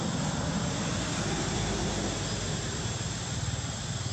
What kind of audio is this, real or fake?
real